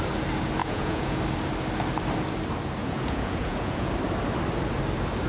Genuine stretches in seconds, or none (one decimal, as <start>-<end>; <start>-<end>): 0.0-0.6; 1.2-2.8; 3.9-5.3